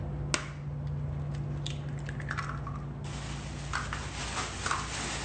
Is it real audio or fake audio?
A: real